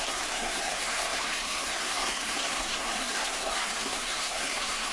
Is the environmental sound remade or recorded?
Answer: remade